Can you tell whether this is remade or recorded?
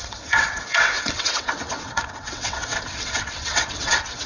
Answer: remade